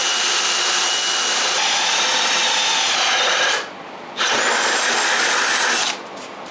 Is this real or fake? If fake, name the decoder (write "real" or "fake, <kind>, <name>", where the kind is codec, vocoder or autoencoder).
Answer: real